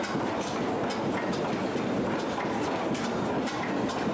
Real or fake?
real